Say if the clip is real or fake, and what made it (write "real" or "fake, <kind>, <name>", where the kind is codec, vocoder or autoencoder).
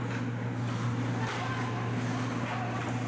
real